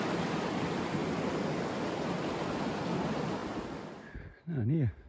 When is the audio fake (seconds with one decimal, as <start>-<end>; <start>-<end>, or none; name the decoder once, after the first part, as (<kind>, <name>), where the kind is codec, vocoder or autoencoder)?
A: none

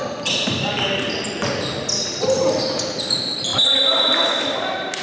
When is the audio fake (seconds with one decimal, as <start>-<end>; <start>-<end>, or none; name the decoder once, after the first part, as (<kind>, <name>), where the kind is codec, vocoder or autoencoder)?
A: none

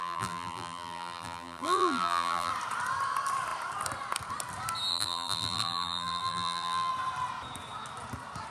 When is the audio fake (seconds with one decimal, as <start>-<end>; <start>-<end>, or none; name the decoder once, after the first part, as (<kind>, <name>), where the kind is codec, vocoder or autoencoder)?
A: 0.0-2.5 (vocoder, BigVGAN v2); 4.9-6.9